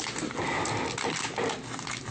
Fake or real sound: real